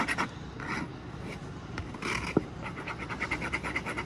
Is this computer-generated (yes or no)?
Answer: no